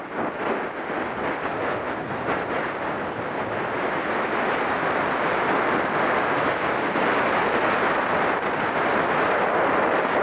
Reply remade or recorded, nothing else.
recorded